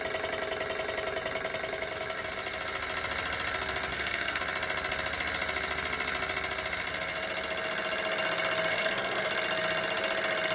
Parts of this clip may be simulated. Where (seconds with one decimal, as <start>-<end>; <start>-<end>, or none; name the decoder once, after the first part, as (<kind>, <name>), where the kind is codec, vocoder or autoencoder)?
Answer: 3.9-4.4 (codec, SNAC); 8.7-9.3

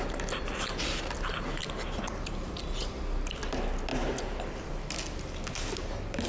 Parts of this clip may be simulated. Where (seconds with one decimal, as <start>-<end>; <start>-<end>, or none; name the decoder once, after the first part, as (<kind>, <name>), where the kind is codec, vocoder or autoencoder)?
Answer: none

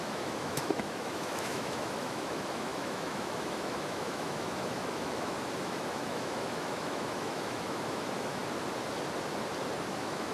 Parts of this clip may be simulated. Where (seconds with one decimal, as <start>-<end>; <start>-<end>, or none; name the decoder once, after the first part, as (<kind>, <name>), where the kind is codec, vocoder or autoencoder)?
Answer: 0.0-8.4 (autoencoder, DAC-VAE); 9.9-10.3

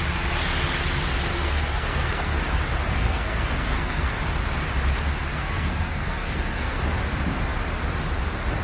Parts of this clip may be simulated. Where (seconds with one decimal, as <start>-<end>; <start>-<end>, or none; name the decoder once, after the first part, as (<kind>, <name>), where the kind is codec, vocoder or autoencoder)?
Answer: 1.3-2.4 (codec, SNAC); 2.9-4.2; 5.3-6.8

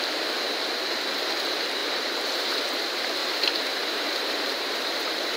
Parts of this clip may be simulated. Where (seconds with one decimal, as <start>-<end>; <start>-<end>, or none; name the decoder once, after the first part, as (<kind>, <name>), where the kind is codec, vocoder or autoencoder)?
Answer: 1.8-2.8 (vocoder, BigVGAN v2); 3.2-4.7